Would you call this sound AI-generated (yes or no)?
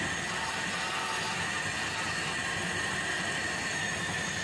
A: no